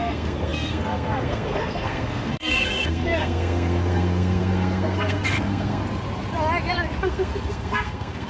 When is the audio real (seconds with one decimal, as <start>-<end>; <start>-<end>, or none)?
5.8-7.0